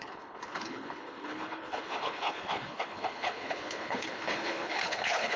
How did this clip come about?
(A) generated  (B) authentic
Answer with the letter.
A